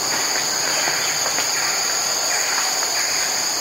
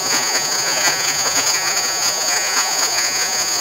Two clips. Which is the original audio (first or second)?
first